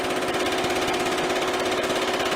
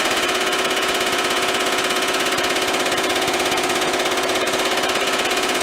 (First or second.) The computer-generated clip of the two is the second